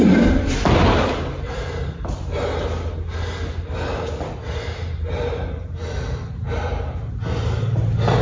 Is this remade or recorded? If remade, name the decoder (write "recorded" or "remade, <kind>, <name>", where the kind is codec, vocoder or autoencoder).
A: recorded